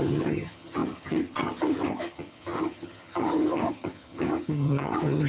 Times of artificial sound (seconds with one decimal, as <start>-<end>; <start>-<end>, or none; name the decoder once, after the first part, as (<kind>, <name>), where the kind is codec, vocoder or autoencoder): 0.0-5.3 (vocoder, HiFi-GAN)